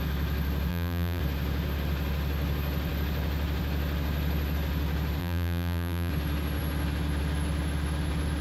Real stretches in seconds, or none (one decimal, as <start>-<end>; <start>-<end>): 0.0-0.7; 1.2-5.2; 6.1-8.4